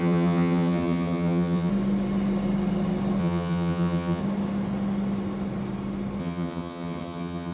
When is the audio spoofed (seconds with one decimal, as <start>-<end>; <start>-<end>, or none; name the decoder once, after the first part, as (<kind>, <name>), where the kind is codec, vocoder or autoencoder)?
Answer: 0.0-1.7 (vocoder, HiFi-GAN); 3.2-4.2; 6.2-7.5